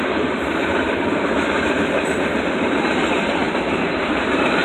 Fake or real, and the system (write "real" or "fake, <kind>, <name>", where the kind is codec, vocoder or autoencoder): fake, vocoder, BigVGAN v2